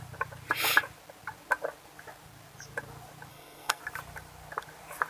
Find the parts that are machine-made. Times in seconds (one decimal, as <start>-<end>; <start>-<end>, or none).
3.3-3.8